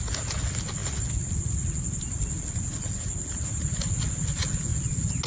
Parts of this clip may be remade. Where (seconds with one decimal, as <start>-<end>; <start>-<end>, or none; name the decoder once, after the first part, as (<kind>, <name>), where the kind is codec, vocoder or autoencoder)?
none